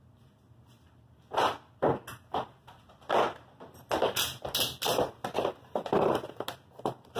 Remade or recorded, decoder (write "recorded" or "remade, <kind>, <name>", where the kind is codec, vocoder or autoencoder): recorded